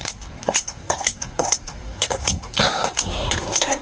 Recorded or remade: remade